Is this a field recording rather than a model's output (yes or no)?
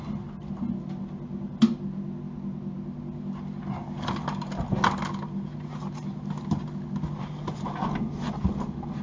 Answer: yes